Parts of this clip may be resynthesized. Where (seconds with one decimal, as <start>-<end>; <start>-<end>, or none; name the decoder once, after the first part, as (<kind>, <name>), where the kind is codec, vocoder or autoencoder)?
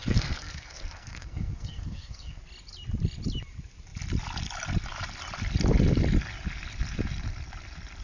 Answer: 0.0-2.4 (codec, SNAC)